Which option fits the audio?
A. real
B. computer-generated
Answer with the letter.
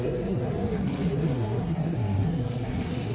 B